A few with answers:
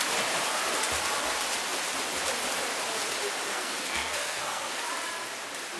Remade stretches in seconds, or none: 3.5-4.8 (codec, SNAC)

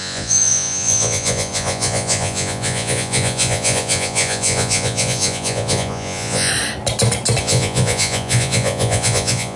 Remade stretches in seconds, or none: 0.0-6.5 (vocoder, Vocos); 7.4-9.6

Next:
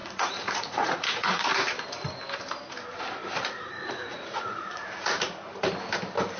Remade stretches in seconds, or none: 0.0-1.5 (vocoder, Vocos); 3.4-5.5